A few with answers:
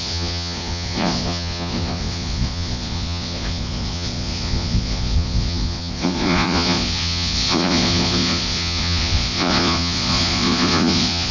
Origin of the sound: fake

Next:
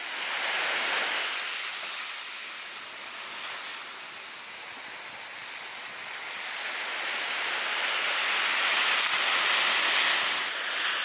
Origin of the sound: real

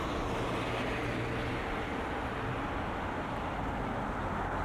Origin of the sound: real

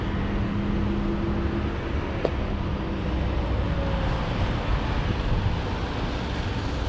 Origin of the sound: real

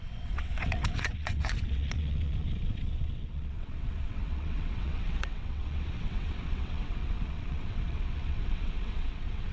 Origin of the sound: fake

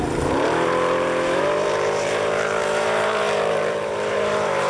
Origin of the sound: fake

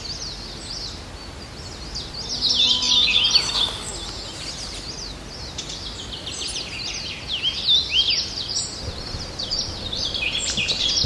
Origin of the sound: real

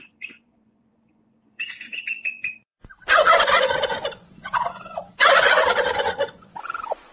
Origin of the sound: fake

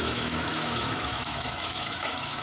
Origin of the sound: fake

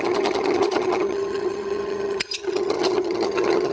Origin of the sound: fake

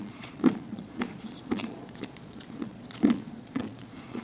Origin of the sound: fake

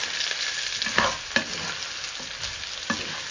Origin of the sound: real